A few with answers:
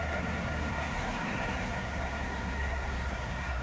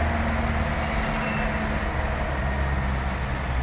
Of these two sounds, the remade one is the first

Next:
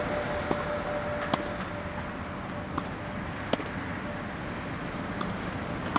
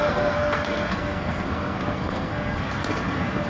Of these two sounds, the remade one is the second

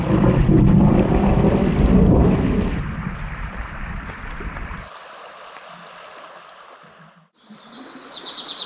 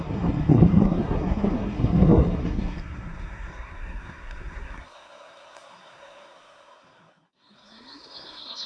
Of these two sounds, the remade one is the second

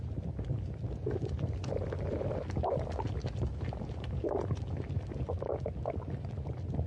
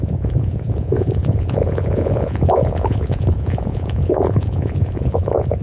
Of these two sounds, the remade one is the second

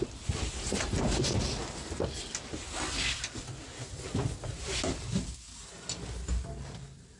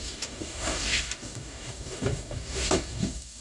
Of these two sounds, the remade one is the second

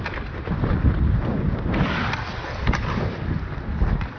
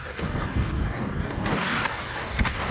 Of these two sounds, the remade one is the second